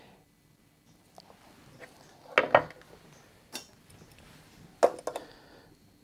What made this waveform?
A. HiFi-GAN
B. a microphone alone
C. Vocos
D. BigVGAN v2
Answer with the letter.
B